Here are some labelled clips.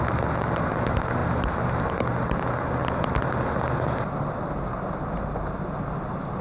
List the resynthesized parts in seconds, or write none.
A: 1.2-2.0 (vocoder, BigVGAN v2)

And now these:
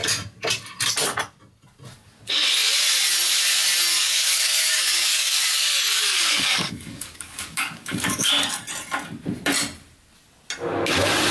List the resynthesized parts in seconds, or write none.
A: 3.9-8.3 (codec, DAC)

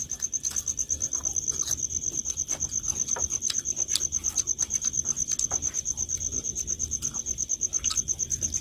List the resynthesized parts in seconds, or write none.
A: none

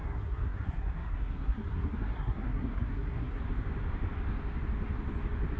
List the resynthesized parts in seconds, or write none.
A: 0.0-3.4 (codec, SNAC)

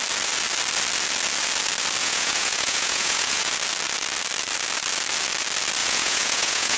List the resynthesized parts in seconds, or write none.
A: 2.0-3.5 (vocoder, Vocos); 5.8-6.8